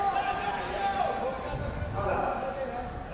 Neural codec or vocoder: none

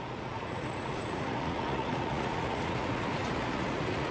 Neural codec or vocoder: vocoder, Vocos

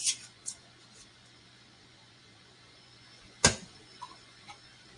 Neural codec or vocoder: vocoder, Vocos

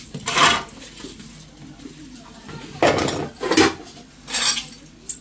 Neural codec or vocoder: none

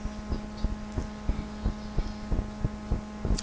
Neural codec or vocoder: none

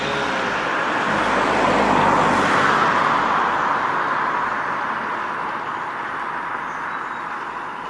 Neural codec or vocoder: none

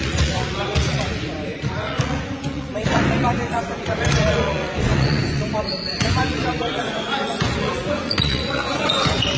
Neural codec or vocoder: vocoder, Vocos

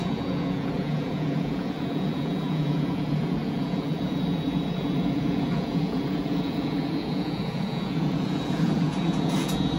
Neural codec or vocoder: vocoder, Vocos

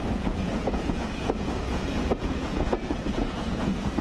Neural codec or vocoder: vocoder, Vocos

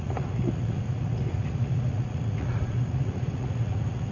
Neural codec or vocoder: vocoder, Vocos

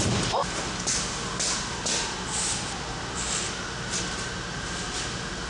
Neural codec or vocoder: none